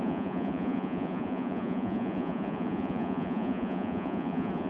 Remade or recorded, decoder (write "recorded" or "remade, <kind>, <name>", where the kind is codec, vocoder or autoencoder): remade, vocoder, Vocos